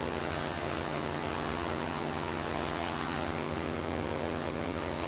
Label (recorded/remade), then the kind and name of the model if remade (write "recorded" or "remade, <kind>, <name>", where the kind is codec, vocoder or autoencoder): remade, vocoder, HiFi-GAN